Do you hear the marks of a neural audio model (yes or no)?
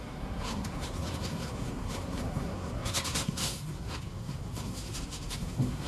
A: yes